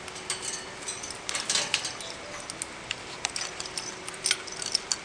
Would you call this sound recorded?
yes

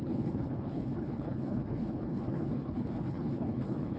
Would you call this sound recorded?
no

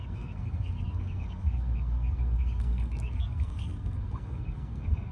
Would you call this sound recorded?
no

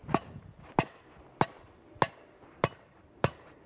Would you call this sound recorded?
yes